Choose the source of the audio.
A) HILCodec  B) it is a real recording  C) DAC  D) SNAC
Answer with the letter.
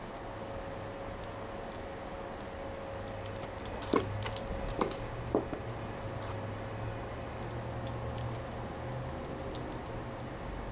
B